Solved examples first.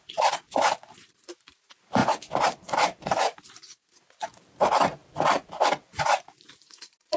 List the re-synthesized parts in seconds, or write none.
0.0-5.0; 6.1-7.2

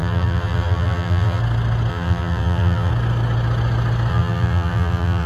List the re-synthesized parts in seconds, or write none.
0.0-1.4; 1.9-2.9; 4.1-5.3

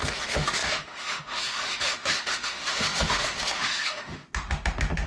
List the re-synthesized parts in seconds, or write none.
0.0-5.1

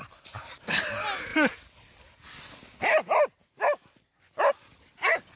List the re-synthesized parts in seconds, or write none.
none

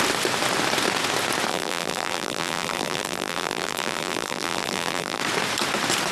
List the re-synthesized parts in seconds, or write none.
1.5-5.2

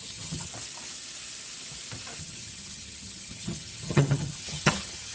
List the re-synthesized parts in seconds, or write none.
0.0-0.5; 2.2-5.1